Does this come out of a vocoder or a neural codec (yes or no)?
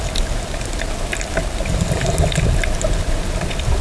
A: no